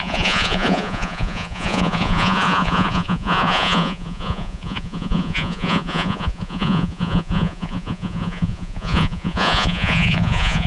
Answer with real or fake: fake